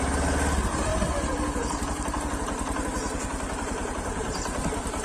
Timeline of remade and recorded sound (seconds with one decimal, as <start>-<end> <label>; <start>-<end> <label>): 0.0-5.0 recorded